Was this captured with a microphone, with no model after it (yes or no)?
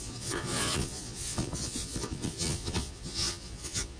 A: no